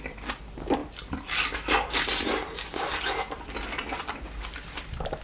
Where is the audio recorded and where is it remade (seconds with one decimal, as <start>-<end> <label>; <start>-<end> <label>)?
0.0-5.2 recorded